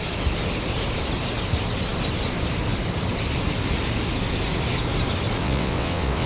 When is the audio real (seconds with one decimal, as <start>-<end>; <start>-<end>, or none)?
0.0-5.4